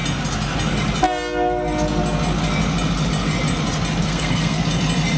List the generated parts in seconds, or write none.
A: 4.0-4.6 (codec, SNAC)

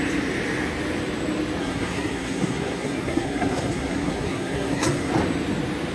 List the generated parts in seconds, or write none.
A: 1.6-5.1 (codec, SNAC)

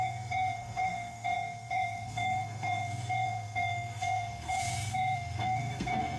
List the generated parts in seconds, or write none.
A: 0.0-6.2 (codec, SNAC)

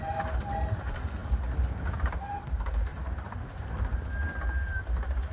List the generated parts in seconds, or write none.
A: none

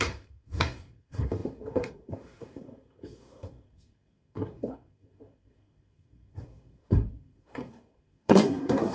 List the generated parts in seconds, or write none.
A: 0.0-8.9 (codec, SNAC)

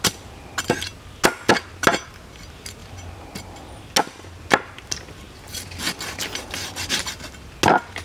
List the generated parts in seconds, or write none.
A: none

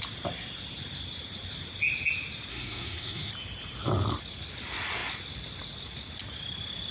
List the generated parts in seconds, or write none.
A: 2.5-3.3 (codec, SNAC)